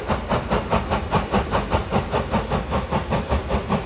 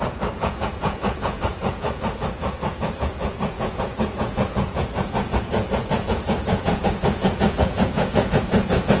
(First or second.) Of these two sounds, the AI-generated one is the second